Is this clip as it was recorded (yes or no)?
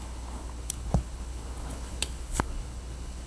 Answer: no